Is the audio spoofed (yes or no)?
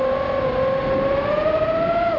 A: no